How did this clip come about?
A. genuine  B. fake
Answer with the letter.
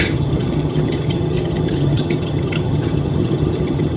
B